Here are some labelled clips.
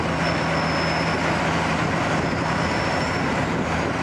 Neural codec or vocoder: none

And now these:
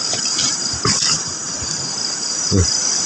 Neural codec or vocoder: none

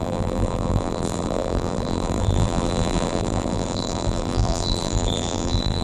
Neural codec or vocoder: vocoder, BigVGAN v2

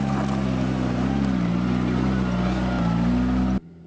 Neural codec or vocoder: none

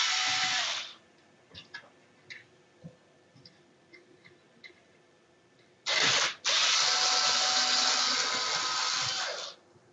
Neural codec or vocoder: none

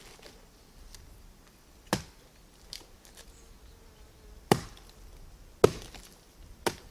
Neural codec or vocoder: none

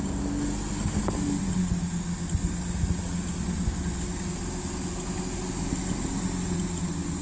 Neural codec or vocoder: none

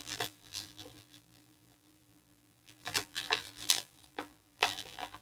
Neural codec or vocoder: vocoder, BigVGAN v2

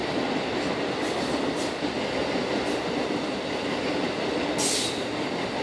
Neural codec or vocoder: none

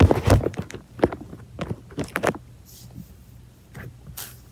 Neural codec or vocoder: none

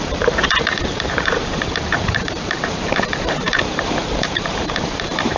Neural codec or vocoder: vocoder, BigVGAN v2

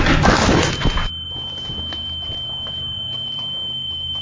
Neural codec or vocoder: vocoder, BigVGAN v2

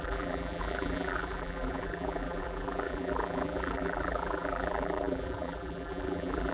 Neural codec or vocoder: vocoder, BigVGAN v2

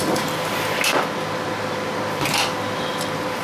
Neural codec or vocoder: none